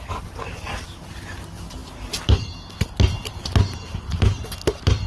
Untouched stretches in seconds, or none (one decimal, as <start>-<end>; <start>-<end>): 0.0-5.1